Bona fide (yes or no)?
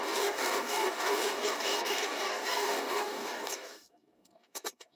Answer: no